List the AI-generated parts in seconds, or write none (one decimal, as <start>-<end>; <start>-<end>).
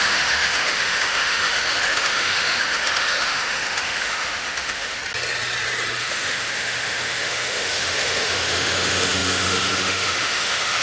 0.0-5.0; 6.0-10.8